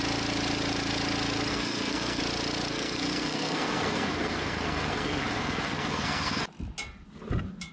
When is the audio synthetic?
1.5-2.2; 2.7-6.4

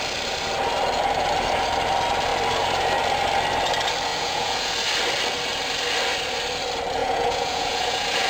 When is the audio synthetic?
4.1-4.7; 7.0-8.3

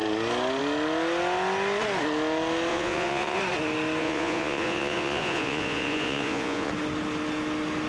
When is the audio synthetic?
2.7-3.4; 4.0-6.7

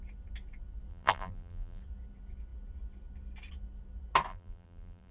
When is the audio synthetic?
0.9-1.8; 4.3-5.1

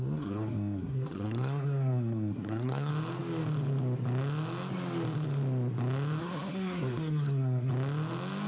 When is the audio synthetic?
0.0-2.9; 6.2-7.7

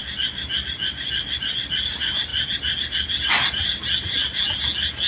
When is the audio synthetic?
none

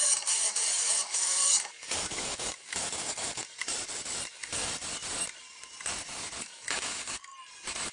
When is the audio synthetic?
0.0-3.4; 4.3-4.7; 6.4-7.3